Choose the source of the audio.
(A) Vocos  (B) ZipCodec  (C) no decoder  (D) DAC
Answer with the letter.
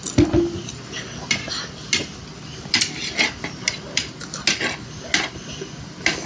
C